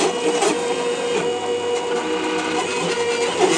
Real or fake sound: real